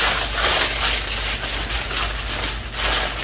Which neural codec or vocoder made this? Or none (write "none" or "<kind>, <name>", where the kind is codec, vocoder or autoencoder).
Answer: none